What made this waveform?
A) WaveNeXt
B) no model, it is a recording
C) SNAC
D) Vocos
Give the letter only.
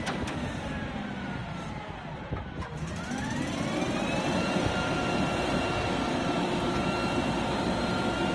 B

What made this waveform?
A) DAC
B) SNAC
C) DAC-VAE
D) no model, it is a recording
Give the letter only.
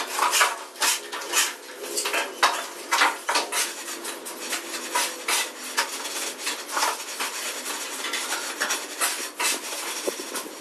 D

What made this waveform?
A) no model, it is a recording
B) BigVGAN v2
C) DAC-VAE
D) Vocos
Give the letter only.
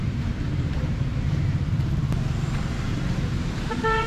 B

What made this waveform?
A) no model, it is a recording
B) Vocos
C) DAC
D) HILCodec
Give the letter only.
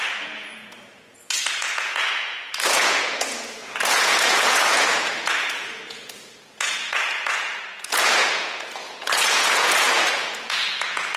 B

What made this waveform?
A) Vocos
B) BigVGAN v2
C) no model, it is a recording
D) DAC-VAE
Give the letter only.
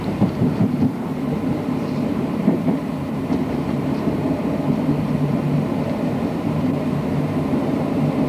B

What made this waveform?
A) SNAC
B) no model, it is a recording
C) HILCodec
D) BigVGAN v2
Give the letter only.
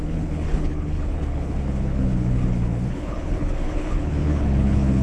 C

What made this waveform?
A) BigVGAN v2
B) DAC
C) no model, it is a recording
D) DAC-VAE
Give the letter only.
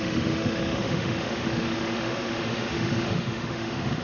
D